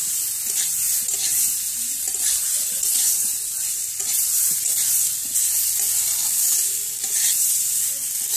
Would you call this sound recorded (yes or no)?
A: yes